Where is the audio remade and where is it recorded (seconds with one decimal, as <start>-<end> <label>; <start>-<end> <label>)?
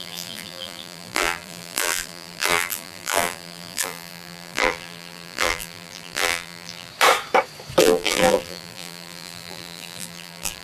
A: 0.0-6.9 remade; 6.9-7.8 recorded; 7.8-10.6 remade